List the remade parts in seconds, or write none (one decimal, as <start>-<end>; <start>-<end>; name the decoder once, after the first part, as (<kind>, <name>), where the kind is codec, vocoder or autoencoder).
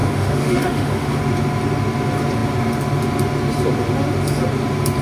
0.0-1.2 (autoencoder, DAC-VAE)